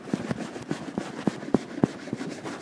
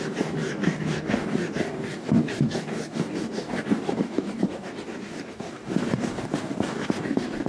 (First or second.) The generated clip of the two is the second